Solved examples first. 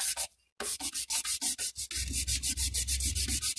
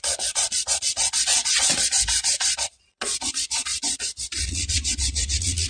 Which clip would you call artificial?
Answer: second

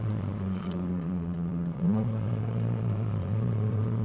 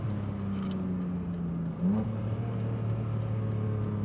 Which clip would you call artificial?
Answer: first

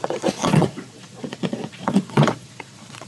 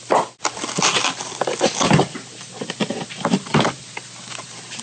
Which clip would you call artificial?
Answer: first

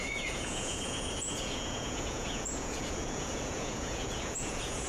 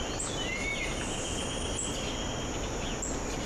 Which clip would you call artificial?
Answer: first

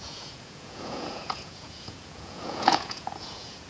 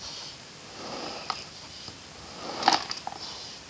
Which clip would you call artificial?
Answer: first